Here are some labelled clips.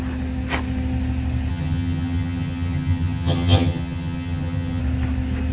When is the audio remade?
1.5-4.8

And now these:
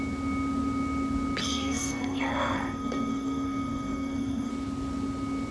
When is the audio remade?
1.4-4.5

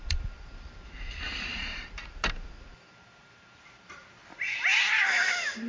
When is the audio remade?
0.0-4.2; 5.2-5.7

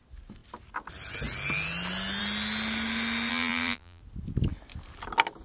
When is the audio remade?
3.3-4.0

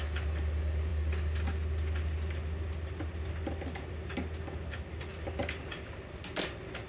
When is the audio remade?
none

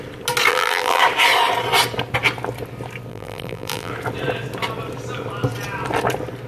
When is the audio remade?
0.5-1.0; 3.1-3.9